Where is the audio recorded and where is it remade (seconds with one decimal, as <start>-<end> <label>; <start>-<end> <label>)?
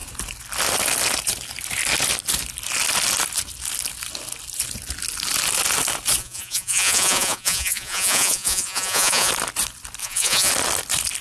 0.0-6.2 recorded; 6.2-9.3 remade; 9.3-10.0 recorded; 10.0-10.5 remade; 10.5-11.2 recorded